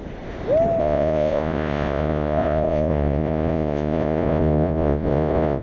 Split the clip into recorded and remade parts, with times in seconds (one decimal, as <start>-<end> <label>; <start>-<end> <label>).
0.0-0.8 recorded; 0.8-5.6 remade